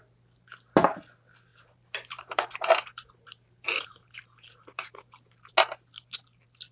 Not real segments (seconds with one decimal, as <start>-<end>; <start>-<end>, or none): 1.5-5.5